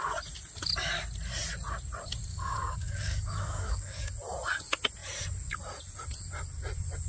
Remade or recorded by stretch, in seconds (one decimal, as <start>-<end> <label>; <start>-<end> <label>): 0.0-2.3 recorded; 2.3-4.1 remade; 4.1-7.1 recorded